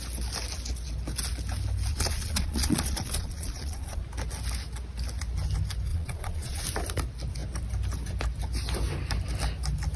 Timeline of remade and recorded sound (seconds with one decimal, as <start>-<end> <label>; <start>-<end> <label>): 0.0-1.9 recorded; 1.9-4.0 remade; 4.0-5.9 recorded; 5.9-6.6 remade; 6.6-10.0 recorded

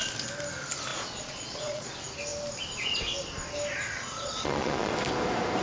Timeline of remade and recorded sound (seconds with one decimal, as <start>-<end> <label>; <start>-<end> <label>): 0.0-0.9 recorded; 0.9-1.9 remade; 1.9-3.9 recorded; 3.9-4.9 remade; 4.9-5.6 recorded

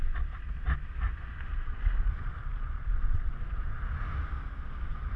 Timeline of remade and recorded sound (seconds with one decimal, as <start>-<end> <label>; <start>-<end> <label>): 0.0-1.5 recorded; 1.5-3.3 remade; 3.3-5.2 recorded

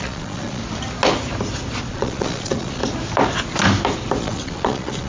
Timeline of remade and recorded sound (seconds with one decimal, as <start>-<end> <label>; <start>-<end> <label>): 0.0-0.6 remade; 0.6-1.9 recorded; 1.9-2.8 remade; 2.8-4.2 recorded; 4.2-5.1 remade

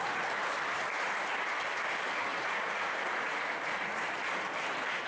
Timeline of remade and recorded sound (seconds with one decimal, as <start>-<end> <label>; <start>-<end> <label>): 0.0-2.3 recorded; 2.3-4.0 remade; 4.0-5.1 recorded

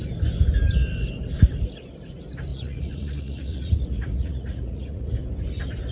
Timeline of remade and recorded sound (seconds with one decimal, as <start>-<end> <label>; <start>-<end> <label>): 0.0-2.5 recorded; 2.5-5.1 remade; 5.1-5.9 recorded

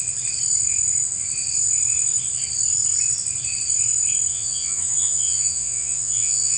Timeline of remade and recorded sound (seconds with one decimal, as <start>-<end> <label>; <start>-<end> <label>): 0.0-4.3 recorded; 4.3-6.6 remade